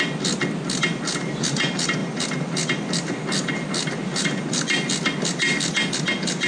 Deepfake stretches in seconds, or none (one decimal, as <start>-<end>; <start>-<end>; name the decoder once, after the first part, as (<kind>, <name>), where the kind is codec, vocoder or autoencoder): none

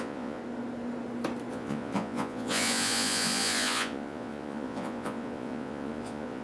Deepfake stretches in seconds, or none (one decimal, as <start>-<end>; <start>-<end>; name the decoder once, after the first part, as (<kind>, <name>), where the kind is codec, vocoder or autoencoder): 0.0-0.4 (vocoder, Vocos); 1.5-6.4

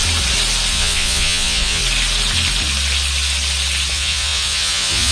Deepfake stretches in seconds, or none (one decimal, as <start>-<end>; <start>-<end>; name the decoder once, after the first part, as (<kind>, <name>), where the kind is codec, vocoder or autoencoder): 0.7-1.8 (vocoder, Vocos); 3.9-5.1

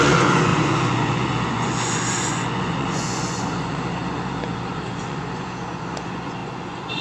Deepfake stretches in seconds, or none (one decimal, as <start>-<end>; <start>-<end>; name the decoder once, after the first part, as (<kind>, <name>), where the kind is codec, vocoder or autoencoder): 0.0-7.0 (vocoder, Vocos)

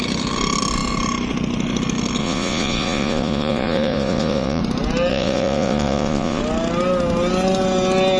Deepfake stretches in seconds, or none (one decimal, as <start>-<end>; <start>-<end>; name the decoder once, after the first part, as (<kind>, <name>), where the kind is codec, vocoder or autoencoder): 2.2-4.6 (vocoder, Vocos); 5.1-6.4

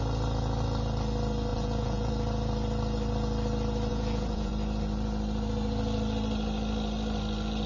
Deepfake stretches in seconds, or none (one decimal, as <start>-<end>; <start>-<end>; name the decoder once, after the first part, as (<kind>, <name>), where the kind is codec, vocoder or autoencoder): 1.5-2.1 (vocoder, Vocos); 3.9-4.5